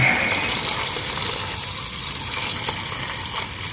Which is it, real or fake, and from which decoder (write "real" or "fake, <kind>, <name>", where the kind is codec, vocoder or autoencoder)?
real